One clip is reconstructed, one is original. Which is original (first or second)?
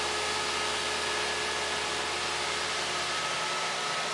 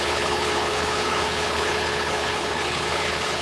first